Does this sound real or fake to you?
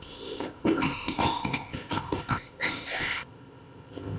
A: fake